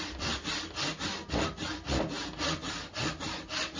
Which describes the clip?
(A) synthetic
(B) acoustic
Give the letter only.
B